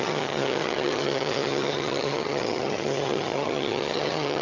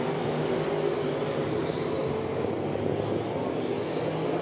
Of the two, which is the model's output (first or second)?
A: first